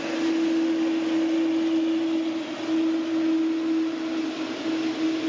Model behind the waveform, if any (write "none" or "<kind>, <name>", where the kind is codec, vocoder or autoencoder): none